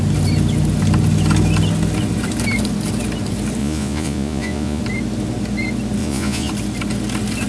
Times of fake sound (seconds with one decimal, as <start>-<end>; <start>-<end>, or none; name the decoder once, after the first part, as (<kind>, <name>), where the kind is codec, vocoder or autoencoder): 3.6-4.8 (vocoder, Vocos); 6.0-6.5